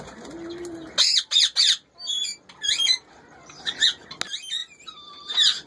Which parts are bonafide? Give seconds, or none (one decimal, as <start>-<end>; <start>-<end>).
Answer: 0.0-4.6